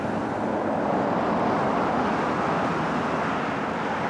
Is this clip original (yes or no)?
yes